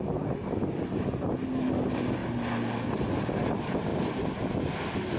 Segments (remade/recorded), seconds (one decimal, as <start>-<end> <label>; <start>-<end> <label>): 0.0-5.2 recorded